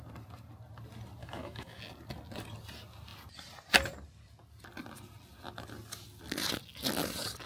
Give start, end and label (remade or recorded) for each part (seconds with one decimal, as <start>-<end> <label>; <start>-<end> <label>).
0.0-1.2 recorded; 1.2-1.8 remade; 1.8-7.5 recorded